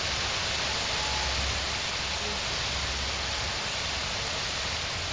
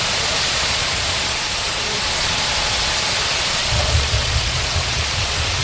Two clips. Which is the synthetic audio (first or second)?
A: second